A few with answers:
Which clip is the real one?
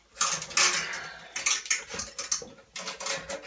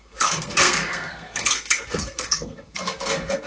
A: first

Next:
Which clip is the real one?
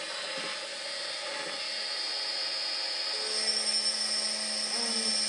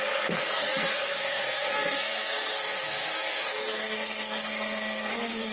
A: first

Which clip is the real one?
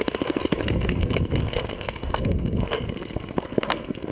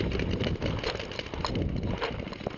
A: second